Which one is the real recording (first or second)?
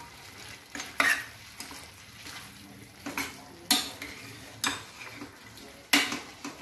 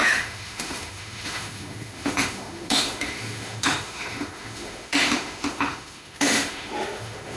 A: first